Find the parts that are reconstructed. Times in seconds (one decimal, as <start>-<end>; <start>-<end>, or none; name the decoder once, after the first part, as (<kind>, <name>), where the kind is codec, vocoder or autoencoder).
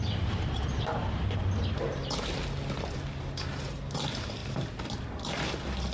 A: none